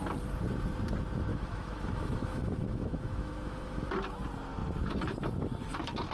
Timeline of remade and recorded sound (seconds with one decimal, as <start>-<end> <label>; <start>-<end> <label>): 0.0-1.3 recorded; 1.3-3.9 remade; 3.9-6.1 recorded